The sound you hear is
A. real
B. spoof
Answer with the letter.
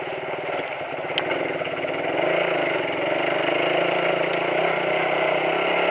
A